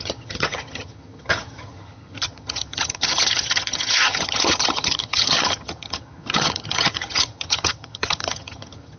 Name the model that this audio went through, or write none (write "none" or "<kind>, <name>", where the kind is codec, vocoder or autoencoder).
vocoder, HiFi-GAN